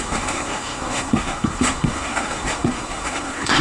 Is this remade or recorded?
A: remade